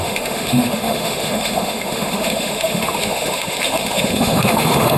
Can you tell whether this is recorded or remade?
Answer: remade